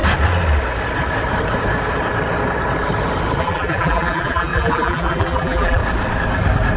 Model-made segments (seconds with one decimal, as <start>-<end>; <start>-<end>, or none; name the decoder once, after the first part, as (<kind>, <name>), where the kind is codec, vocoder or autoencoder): 3.4-5.8 (vocoder, BigVGAN v2)